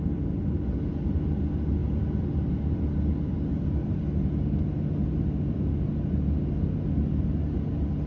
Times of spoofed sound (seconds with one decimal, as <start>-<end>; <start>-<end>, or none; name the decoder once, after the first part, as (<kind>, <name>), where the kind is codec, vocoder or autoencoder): none